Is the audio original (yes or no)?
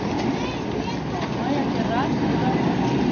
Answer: yes